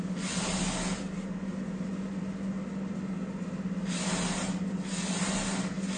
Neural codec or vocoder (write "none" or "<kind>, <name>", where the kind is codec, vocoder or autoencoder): none